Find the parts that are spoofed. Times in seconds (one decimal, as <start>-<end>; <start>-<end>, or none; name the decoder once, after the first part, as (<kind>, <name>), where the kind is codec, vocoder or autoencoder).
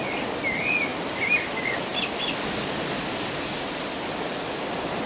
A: none